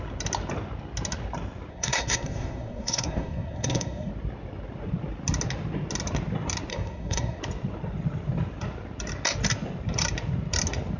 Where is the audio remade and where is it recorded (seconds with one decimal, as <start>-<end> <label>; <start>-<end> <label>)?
0.0-1.7 recorded; 1.7-4.1 remade; 4.1-6.7 recorded; 6.7-7.4 remade; 7.4-11.0 recorded